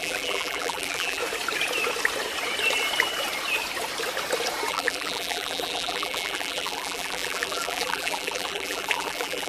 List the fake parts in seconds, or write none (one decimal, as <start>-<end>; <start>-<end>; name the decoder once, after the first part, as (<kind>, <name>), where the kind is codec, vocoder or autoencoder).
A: 0.0-1.2 (vocoder, BigVGAN v2); 4.7-9.5